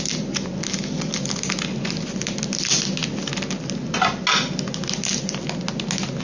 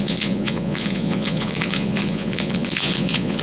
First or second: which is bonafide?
first